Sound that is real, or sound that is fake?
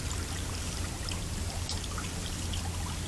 real